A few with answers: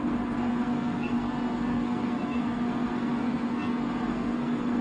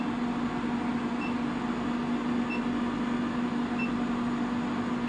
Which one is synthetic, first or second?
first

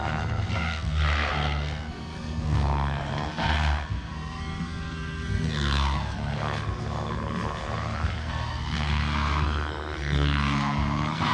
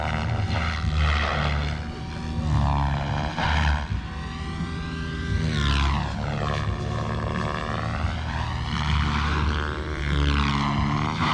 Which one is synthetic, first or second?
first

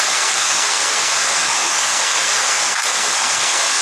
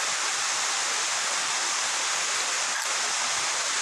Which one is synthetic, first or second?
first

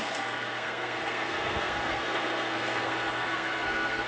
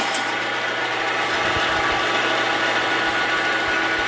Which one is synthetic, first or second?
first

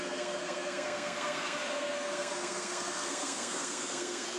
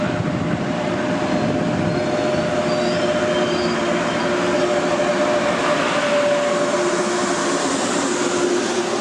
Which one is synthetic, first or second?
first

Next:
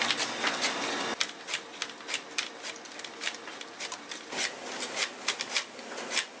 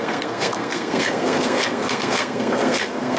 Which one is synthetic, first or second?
second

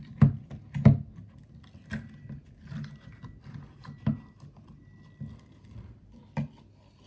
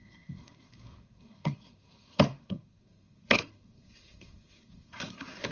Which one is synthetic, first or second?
second